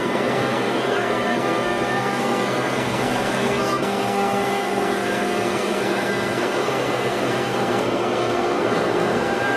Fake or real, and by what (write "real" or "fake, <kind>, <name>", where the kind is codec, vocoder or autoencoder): fake, codec, SNAC